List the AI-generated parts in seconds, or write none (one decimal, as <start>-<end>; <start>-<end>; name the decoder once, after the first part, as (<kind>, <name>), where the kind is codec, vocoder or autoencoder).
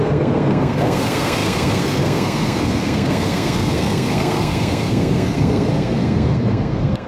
0.0-7.1 (codec, SNAC)